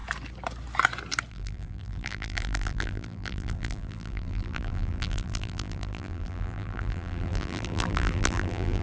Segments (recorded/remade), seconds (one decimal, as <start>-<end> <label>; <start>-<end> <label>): 0.0-1.3 recorded; 1.3-8.8 remade